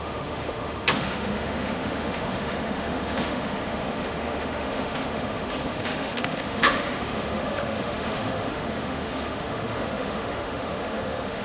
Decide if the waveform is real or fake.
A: fake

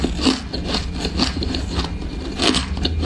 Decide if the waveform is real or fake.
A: real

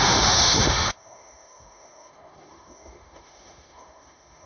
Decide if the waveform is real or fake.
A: fake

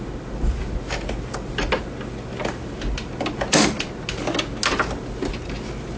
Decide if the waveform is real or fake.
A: real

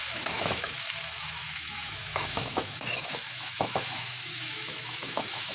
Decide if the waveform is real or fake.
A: fake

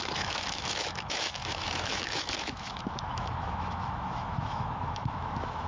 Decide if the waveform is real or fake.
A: fake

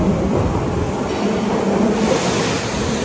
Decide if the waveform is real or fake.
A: real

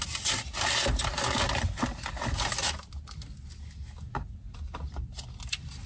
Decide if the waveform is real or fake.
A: real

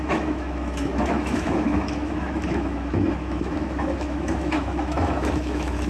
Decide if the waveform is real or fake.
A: fake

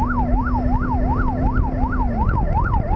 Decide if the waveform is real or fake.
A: real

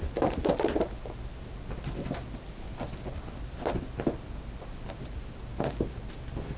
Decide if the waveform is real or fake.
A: real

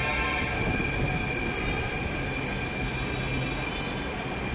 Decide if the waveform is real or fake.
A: real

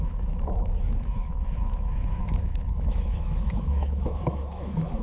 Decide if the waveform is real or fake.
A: fake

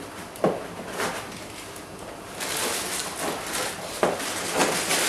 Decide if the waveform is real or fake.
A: real